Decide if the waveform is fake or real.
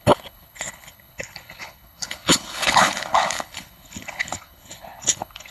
fake